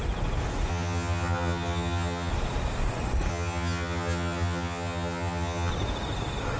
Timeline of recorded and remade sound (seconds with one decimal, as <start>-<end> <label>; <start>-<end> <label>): 0.0-0.7 recorded; 0.7-2.3 remade; 2.3-3.3 recorded; 3.3-5.7 remade; 5.7-6.6 recorded